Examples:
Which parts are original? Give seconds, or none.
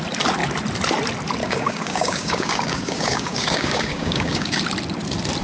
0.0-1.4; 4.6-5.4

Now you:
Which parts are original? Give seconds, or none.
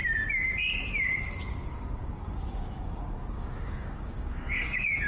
0.0-1.2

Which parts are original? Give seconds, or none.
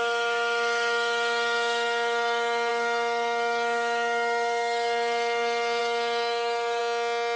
6.8-7.4